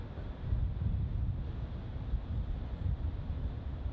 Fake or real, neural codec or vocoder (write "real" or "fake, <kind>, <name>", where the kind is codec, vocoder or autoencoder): real